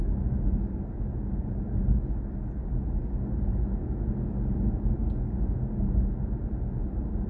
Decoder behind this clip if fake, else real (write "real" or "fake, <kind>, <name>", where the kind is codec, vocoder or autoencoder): real